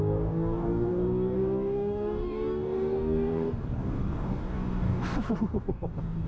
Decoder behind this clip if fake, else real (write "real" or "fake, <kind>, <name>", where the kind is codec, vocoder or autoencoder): fake, codec, DAC